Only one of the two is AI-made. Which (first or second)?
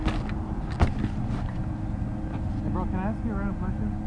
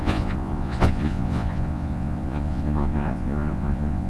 second